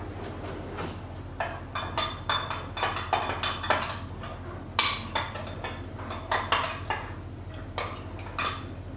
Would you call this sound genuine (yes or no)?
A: yes